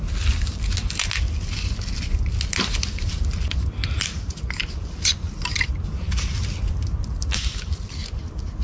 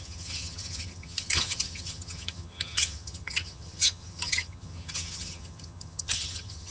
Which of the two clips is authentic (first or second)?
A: first